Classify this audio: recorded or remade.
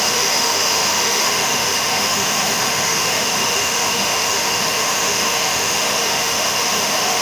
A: remade